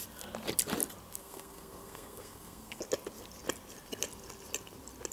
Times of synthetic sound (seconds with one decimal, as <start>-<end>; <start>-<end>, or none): 1.2-2.8